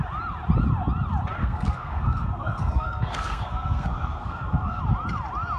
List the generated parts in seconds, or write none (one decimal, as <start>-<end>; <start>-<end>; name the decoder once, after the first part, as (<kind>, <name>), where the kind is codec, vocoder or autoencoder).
1.4-4.8 (codec, SNAC)